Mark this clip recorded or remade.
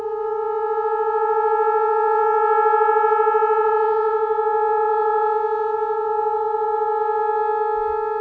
recorded